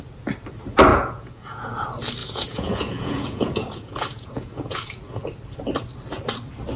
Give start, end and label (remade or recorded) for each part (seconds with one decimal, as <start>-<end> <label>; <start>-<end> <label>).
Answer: 0.0-0.9 recorded; 0.9-1.7 remade; 1.7-2.2 recorded; 2.2-5.0 remade; 5.0-6.8 recorded